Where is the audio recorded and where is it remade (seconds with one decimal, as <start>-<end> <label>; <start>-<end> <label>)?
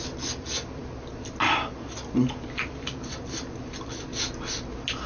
0.0-5.1 recorded